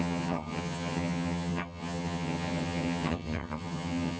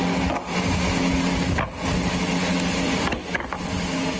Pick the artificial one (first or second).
first